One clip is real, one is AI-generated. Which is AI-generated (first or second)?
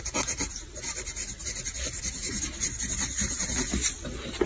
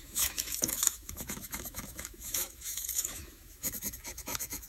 second